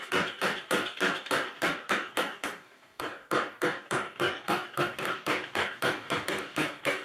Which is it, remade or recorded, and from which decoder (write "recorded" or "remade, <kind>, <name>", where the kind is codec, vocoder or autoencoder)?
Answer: remade, codec, DAC